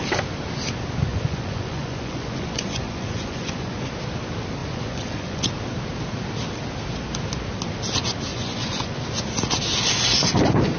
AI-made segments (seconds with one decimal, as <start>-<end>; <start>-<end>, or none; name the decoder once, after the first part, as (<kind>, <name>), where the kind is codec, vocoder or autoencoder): 1.1-3.9 (vocoder, Vocos); 4.6-5.5; 8.3-8.9